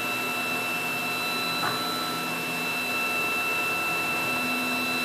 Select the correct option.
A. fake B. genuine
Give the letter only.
B